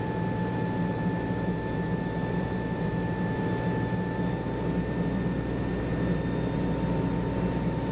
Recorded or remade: recorded